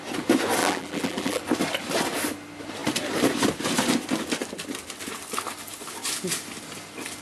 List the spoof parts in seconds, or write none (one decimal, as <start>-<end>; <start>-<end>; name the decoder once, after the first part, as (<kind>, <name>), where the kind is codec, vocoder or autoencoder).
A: 0.6-1.4 (vocoder, BigVGAN v2)